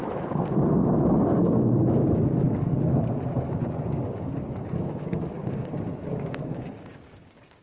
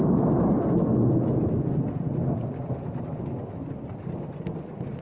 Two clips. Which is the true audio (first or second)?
second